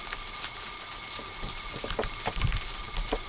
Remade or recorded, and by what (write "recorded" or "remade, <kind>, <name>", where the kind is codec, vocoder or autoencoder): recorded